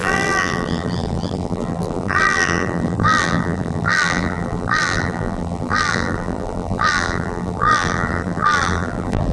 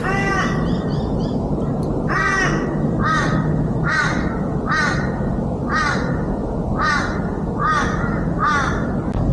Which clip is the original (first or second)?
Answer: second